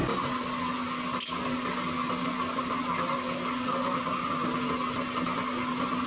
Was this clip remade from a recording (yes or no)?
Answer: no